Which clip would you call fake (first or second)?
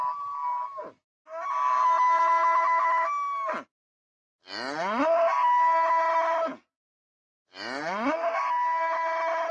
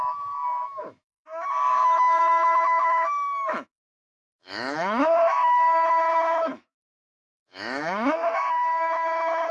second